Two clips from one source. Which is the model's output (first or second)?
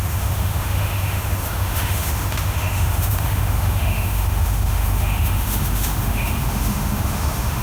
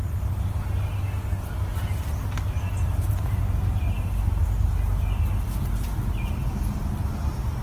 first